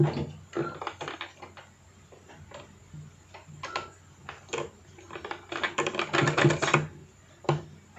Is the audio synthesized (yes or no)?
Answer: no